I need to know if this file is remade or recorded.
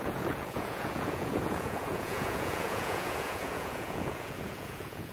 remade